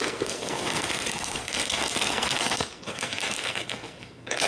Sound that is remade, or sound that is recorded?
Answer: remade